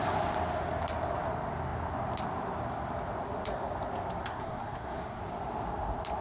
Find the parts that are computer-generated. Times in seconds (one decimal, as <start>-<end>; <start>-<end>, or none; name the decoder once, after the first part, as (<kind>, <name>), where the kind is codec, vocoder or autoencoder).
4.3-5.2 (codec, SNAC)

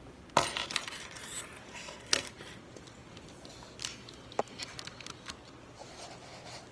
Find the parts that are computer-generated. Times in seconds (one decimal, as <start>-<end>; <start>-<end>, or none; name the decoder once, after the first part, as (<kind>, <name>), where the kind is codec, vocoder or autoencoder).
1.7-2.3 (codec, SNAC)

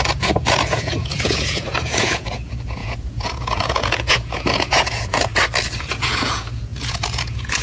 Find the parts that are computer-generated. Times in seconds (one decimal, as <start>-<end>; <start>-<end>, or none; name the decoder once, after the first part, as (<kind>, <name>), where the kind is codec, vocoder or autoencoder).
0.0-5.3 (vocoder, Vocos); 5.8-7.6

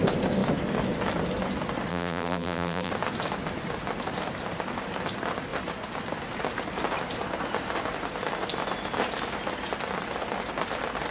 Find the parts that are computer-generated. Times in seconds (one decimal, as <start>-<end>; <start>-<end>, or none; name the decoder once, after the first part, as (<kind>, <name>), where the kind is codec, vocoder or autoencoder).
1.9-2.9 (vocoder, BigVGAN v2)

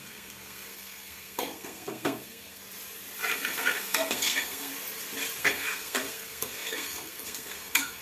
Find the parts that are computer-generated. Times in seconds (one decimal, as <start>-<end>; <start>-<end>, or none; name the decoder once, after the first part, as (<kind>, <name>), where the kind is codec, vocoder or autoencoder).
0.0-2.6 (codec, SNAC); 3.3-4.7; 5.4-8.0

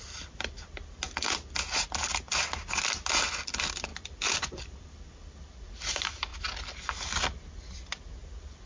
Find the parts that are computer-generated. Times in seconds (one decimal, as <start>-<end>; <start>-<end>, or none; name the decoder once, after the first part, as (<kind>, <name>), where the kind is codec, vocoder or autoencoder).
3.9-4.8 (vocoder, BigVGAN v2); 6.3-6.8

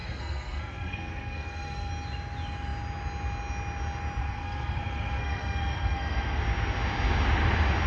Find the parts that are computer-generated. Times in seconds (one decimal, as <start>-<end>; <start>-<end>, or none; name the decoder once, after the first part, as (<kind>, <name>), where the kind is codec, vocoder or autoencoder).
0.0-1.9 (codec, SNAC); 4.2-6.4